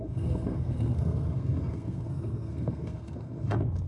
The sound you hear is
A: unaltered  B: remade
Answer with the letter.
B